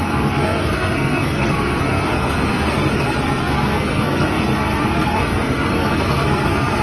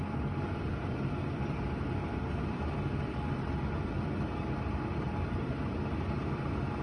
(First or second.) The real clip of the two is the second